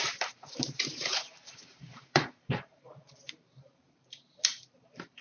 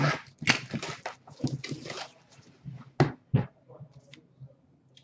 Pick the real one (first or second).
second